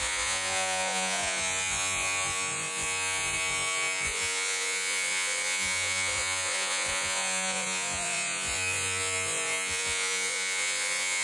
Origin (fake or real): fake